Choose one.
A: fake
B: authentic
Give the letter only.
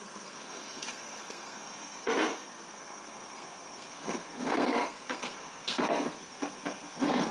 A